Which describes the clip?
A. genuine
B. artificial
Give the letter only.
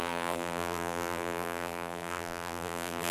B